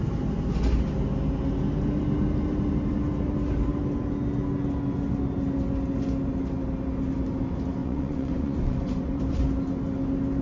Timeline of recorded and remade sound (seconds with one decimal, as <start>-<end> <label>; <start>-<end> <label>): 0.0-7.8 recorded; 7.8-9.2 remade; 9.2-10.4 recorded